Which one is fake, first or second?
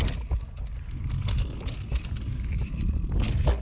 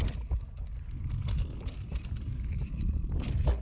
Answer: second